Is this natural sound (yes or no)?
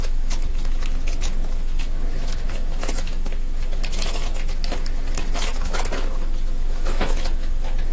no